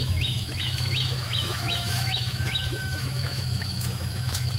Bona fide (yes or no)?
no